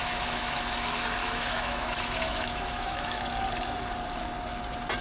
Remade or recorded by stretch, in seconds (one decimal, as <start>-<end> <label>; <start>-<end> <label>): 0.0-0.6 remade; 0.6-1.2 recorded; 1.2-3.2 remade; 3.2-5.0 recorded

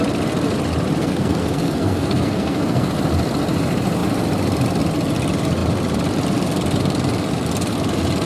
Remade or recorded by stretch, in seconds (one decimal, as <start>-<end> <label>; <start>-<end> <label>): 0.0-1.0 recorded; 1.0-2.9 remade; 2.9-8.3 recorded

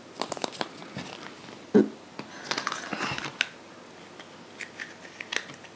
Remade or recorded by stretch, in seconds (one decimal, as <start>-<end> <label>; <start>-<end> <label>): 0.0-5.8 recorded